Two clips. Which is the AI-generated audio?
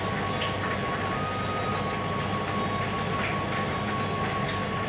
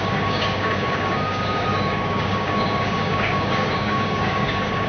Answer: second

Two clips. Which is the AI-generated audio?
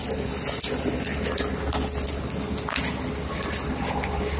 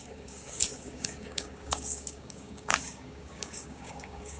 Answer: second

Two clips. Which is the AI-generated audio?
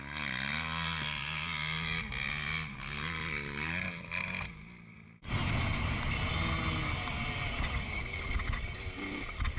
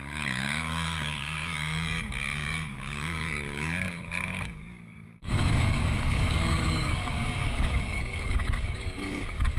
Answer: second